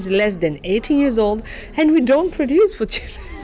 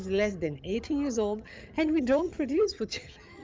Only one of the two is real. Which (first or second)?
first